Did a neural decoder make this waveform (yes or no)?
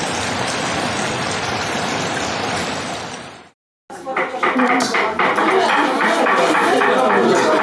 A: no